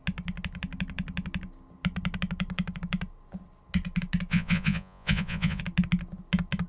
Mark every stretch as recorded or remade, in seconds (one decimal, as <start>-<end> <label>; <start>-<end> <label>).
0.0-4.3 recorded; 4.3-5.6 remade; 5.6-6.7 recorded

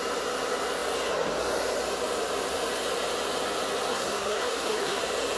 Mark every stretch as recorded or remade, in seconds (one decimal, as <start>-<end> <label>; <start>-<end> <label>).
0.0-3.9 recorded; 3.9-5.0 remade; 5.0-5.4 recorded